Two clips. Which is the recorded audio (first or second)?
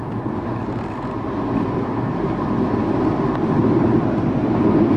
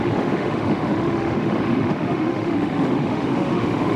first